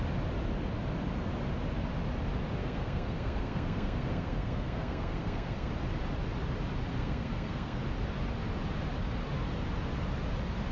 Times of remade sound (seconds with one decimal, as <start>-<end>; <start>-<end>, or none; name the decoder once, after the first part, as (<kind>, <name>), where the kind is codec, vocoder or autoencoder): 2.6-5.7 (codec, SNAC); 6.9-7.8